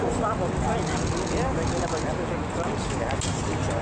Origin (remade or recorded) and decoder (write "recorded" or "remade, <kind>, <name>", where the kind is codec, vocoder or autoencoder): recorded